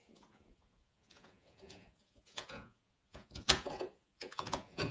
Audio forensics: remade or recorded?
remade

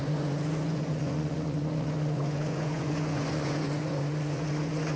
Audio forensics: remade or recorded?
remade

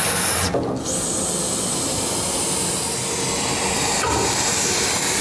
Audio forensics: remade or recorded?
recorded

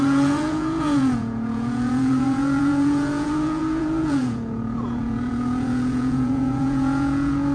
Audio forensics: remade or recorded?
remade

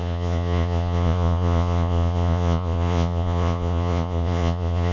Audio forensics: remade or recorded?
remade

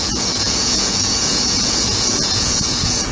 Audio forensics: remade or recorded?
remade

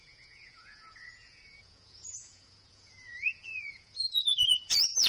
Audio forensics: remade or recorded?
remade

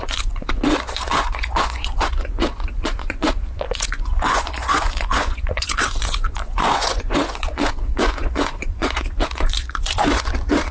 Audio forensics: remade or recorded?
remade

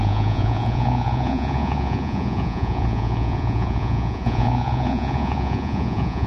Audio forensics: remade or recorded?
remade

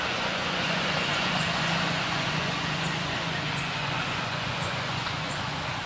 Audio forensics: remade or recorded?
remade